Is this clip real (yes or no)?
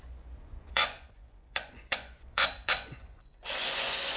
no